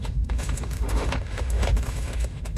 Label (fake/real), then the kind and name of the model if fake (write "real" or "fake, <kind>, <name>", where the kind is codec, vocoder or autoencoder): fake, autoencoder, DAC-VAE